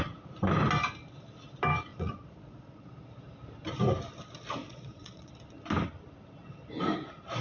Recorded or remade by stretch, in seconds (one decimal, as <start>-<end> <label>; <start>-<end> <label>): 0.0-1.9 recorded; 1.9-2.9 remade; 2.9-4.6 recorded; 4.6-5.3 remade; 5.3-7.4 recorded